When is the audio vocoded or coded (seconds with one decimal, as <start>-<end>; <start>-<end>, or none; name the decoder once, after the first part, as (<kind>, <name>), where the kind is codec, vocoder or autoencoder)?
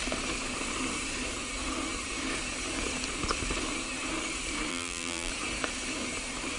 4.7-5.3 (vocoder, BigVGAN v2)